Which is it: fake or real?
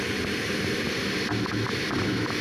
real